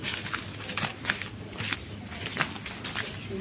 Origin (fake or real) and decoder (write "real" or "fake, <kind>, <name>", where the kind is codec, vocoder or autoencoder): real